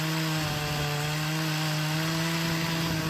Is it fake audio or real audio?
real